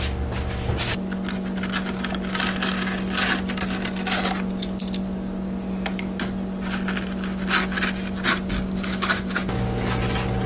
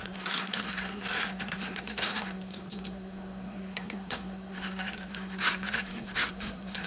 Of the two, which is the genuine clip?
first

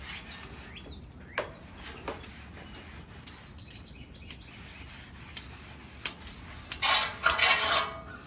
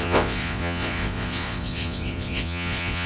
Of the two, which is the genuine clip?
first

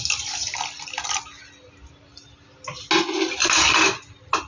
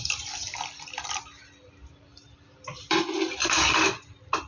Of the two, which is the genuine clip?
first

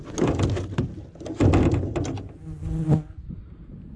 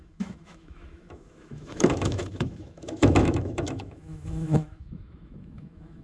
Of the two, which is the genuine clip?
first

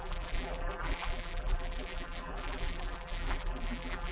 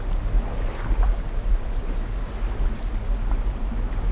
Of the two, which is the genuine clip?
second